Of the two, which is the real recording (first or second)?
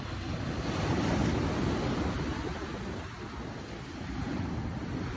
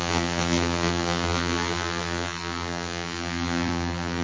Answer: first